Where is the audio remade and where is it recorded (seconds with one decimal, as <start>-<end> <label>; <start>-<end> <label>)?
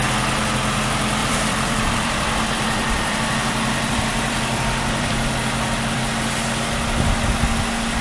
0.0-1.2 recorded; 1.2-6.0 remade; 6.0-8.0 recorded